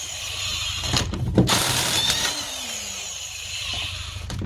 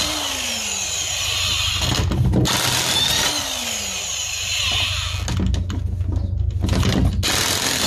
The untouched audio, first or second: second